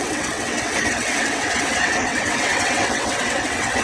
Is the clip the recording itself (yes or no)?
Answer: no